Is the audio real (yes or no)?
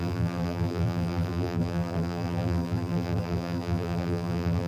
no